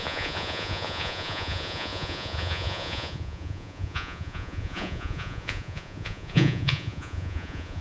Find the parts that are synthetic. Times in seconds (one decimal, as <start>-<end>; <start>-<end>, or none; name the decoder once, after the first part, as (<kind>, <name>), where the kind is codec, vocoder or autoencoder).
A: 0.0-7.8 (vocoder, Vocos)